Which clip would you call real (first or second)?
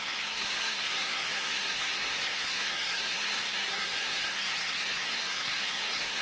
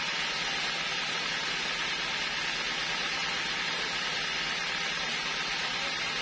second